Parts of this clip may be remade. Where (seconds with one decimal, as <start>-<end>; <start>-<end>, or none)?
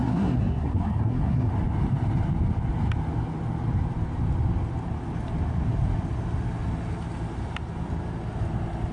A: 0.0-1.5